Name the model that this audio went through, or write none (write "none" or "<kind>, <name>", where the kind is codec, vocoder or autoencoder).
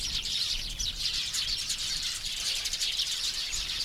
vocoder, BigVGAN v2